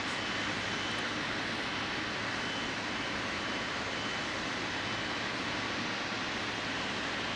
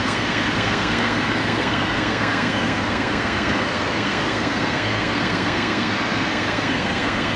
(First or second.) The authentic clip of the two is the first